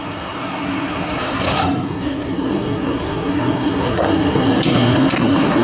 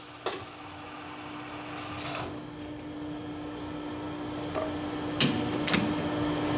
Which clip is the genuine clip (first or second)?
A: second